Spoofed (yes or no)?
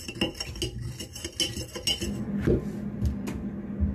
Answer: no